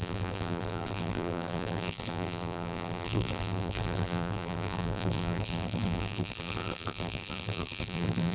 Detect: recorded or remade remade